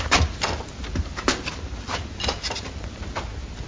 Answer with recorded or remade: recorded